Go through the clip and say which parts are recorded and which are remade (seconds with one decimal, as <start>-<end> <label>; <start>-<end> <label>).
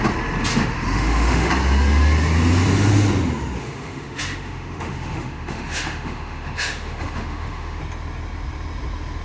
0.0-0.5 recorded; 0.5-1.5 remade; 1.5-3.6 recorded; 3.6-7.8 remade; 7.8-9.2 recorded